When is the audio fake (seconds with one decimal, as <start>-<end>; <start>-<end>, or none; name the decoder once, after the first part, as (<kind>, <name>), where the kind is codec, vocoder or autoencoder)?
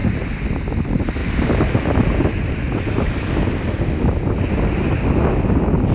0.0-0.5 (vocoder, BigVGAN v2); 1.2-4.3